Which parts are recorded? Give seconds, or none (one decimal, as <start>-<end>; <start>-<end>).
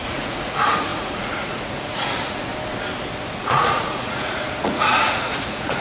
2.5-3.4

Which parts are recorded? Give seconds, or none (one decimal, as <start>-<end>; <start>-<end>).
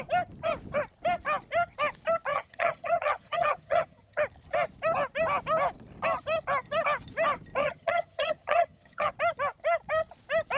0.0-2.3; 4.2-7.6; 9.1-10.6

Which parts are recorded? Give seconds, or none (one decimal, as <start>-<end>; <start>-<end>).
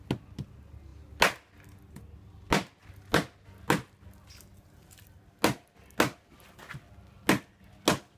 0.0-8.2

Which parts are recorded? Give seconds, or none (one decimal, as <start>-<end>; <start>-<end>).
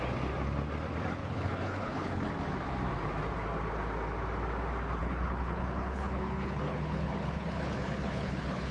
0.0-1.2; 2.3-5.0